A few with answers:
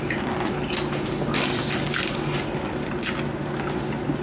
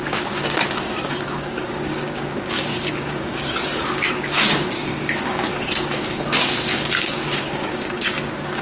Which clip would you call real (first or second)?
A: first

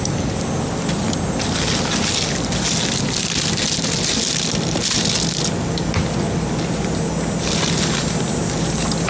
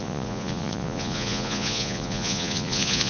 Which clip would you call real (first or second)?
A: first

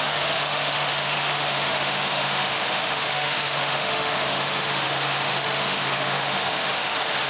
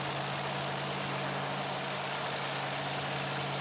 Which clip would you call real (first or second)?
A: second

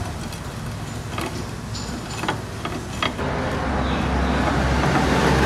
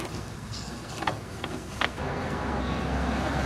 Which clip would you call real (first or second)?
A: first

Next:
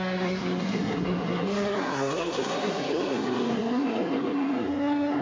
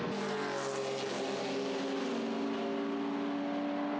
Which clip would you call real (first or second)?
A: second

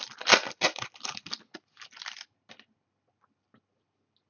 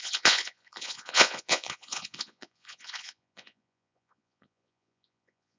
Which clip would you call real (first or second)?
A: first